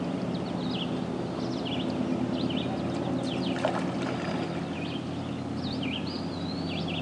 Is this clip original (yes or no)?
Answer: yes